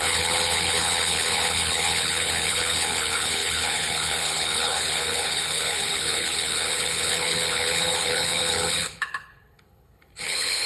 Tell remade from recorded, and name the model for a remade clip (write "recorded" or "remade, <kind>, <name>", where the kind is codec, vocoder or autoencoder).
remade, codec, HILCodec